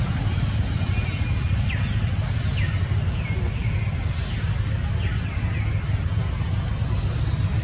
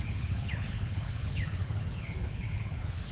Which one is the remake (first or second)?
second